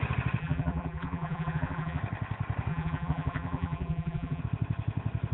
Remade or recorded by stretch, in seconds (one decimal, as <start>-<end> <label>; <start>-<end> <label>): 0.0-0.4 recorded; 0.4-2.0 remade; 2.0-2.7 recorded; 2.7-4.4 remade; 4.4-5.3 recorded